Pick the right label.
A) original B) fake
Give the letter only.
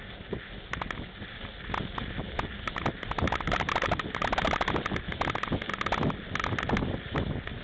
A